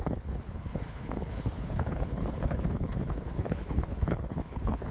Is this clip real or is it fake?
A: fake